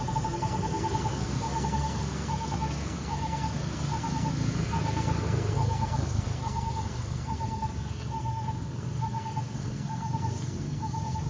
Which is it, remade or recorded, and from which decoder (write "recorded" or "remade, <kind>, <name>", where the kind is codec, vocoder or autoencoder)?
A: remade, codec, SNAC